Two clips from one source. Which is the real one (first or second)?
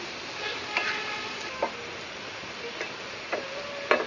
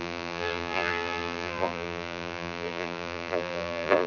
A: first